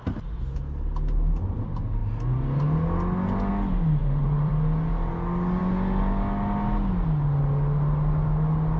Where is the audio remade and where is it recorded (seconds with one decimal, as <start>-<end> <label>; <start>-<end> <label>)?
0.0-4.0 recorded; 4.0-4.5 remade; 4.5-8.8 recorded